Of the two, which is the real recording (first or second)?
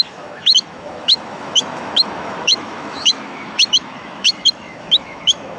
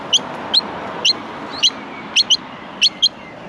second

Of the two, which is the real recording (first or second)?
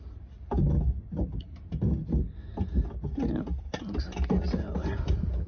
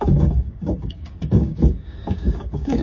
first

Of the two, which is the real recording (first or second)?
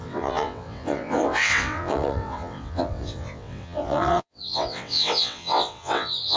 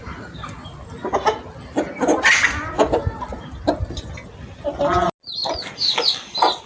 second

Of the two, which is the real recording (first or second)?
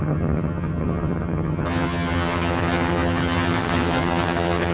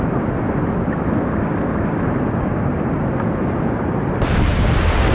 second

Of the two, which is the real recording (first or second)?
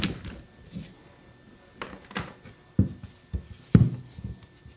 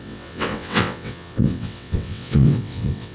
first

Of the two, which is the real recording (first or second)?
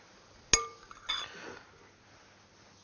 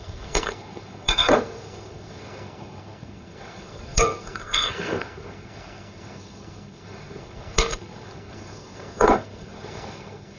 first